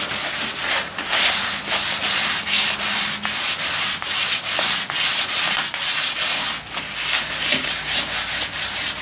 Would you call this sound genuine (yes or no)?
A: yes